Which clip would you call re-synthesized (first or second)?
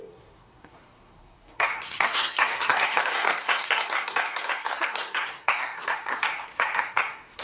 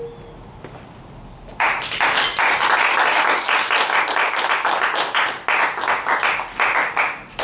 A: first